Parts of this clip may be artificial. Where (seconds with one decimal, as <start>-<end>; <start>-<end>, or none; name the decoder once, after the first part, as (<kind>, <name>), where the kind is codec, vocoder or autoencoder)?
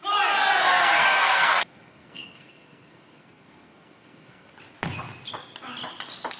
0.7-4.5 (codec, SNAC)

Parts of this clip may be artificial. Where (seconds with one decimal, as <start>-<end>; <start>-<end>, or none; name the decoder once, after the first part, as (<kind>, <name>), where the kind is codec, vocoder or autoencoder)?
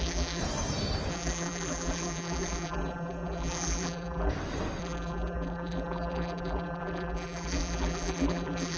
0.0-0.4 (vocoder, BigVGAN v2); 1.1-4.3; 4.8-8.8